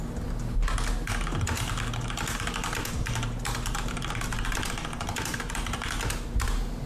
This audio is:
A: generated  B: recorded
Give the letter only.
B